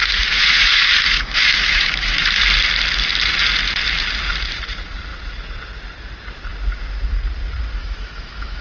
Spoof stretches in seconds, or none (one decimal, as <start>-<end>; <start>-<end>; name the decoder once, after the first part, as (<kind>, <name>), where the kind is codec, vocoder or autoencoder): 0.0-2.4 (autoencoder, DAC-VAE); 7.8-8.6